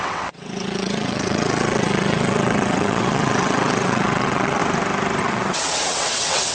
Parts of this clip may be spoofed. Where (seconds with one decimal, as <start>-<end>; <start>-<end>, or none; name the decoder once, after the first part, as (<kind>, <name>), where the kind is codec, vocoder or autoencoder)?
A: 0.0-4.6 (vocoder, WaveNeXt); 5.2-6.5